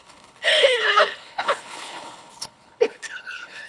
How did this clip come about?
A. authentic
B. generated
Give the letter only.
B